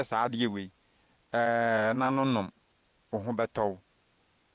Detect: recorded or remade remade